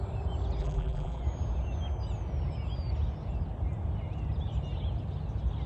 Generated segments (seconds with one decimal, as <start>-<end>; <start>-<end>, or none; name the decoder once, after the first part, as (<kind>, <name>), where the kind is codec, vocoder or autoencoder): 0.6-1.2 (vocoder, BigVGAN v2)

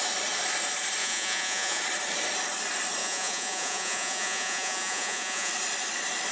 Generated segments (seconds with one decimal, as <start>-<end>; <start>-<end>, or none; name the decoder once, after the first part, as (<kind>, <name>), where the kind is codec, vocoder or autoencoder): 1.0-1.8 (vocoder, Vocos); 3.0-5.5

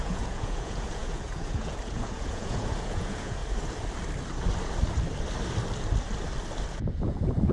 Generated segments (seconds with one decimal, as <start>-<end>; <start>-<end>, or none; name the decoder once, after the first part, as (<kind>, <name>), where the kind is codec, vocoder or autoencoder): 0.0-3.4 (vocoder, Vocos); 6.7-7.5

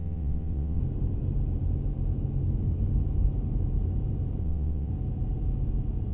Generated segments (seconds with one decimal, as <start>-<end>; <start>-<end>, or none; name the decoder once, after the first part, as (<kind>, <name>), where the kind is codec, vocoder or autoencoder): 0.0-0.8 (vocoder, WaveNeXt); 4.4-4.9

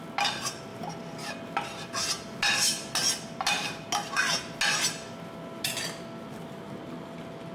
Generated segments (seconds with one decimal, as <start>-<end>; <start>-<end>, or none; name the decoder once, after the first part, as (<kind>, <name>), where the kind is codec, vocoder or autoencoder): 0.7-1.3 (vocoder, BigVGAN v2)

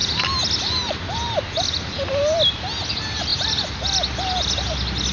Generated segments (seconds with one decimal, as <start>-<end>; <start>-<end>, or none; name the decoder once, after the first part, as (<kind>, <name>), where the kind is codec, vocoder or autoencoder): none

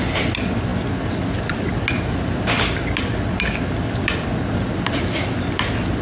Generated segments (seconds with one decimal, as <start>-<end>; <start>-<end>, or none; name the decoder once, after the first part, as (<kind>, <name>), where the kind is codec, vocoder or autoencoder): none